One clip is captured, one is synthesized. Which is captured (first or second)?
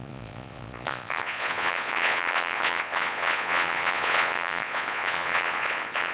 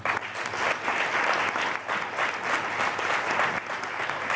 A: second